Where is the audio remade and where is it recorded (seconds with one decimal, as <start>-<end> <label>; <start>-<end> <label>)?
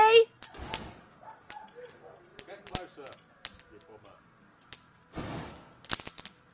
0.0-6.5 recorded